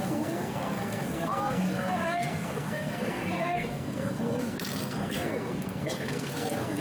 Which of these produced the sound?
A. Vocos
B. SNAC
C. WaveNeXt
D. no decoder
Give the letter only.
B